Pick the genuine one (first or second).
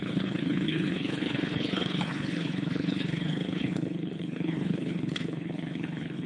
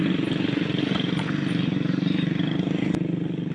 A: second